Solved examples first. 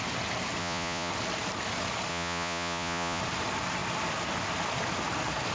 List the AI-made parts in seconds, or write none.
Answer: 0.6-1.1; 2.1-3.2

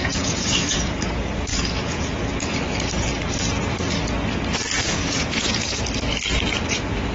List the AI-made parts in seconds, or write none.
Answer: 0.0-0.9; 1.5-2.2; 4.7-5.8

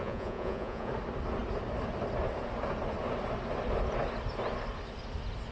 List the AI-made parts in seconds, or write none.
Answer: 0.0-0.9